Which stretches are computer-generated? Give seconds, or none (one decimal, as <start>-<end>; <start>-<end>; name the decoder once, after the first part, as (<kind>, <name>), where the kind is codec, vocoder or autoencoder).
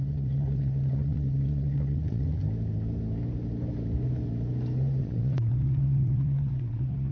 0.0-2.4 (vocoder, WaveNeXt); 5.0-7.1